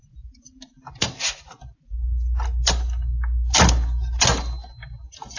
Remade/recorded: recorded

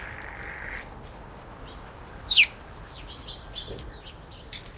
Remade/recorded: recorded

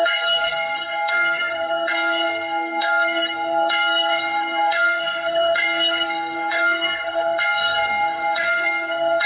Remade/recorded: remade